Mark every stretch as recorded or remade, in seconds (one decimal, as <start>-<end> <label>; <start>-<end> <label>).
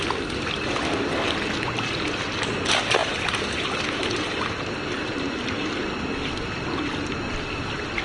0.0-3.0 recorded; 3.0-5.3 remade; 5.3-8.0 recorded